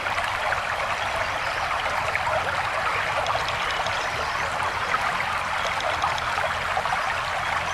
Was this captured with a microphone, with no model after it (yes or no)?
yes